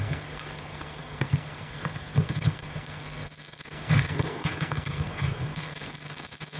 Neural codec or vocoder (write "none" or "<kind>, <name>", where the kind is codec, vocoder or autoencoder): codec, SNAC